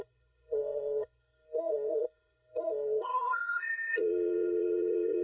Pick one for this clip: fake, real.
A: fake